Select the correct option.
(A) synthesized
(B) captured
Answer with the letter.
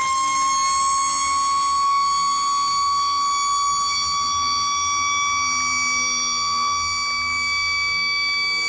B